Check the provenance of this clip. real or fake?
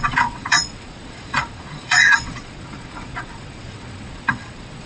fake